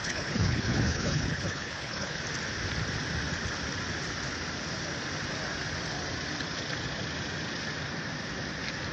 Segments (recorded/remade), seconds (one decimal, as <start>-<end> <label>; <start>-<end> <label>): 0.0-2.2 remade; 2.2-8.9 recorded